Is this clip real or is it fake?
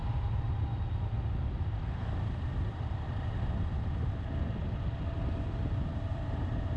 real